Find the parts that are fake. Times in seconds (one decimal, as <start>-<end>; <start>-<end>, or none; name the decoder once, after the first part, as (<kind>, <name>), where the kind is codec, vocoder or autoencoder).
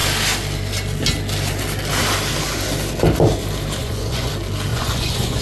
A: 3.8-4.3 (vocoder, Vocos); 4.7-5.4